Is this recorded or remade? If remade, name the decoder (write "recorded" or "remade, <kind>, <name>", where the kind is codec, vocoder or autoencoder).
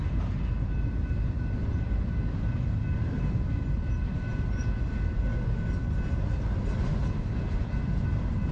recorded